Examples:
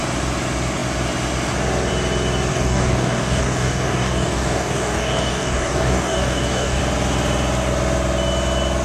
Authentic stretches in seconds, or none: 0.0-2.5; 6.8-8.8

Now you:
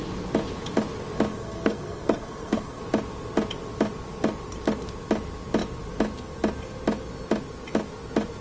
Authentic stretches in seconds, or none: 0.0-1.3; 2.8-8.4